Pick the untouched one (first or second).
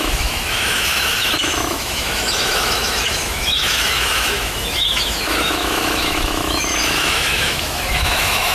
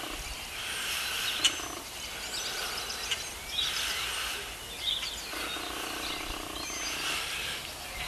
second